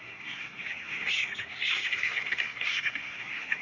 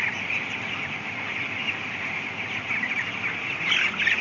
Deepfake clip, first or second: first